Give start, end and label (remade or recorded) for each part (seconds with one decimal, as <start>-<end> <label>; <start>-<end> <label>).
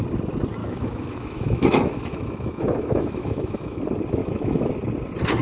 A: 0.0-0.6 recorded; 0.6-3.8 remade; 3.8-4.2 recorded; 4.2-4.7 remade; 4.7-5.4 recorded